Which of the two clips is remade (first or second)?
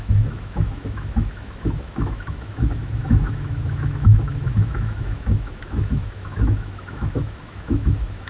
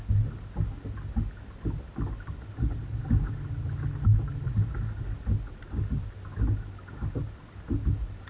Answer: first